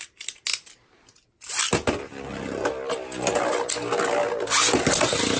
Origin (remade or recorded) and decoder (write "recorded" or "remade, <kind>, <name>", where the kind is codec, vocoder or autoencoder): recorded